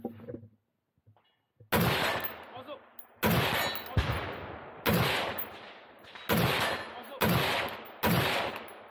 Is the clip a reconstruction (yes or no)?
no